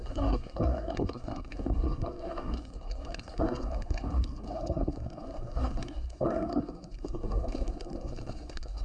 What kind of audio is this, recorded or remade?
remade